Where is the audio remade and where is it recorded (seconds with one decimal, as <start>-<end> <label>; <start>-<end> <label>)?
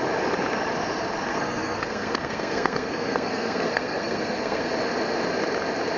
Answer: 0.0-1.3 recorded; 1.3-4.7 remade; 4.7-6.0 recorded